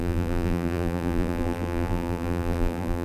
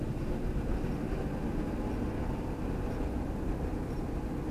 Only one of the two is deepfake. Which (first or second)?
first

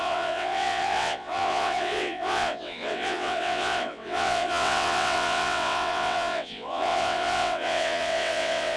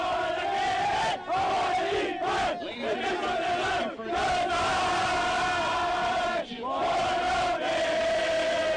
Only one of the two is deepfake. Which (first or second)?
first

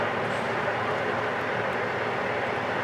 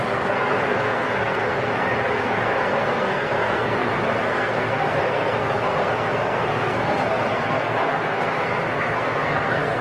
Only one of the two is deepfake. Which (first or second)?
second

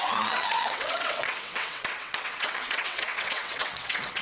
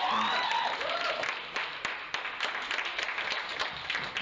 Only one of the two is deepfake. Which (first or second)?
first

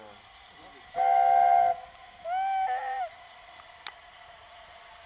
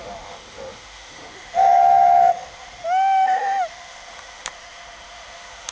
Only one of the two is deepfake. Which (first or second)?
second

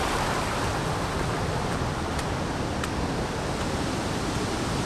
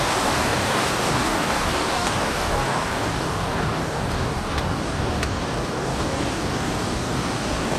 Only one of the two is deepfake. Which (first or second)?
second